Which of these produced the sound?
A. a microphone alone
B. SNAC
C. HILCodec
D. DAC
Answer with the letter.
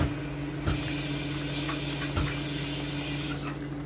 A